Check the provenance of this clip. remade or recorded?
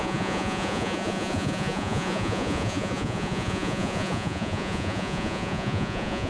remade